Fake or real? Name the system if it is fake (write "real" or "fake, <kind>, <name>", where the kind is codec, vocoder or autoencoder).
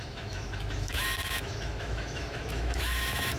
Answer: fake, autoencoder, DAC-VAE